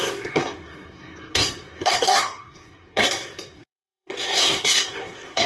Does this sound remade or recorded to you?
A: remade